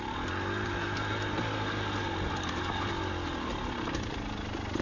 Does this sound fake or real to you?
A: real